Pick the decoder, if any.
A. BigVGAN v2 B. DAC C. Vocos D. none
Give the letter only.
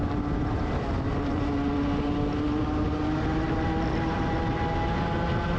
D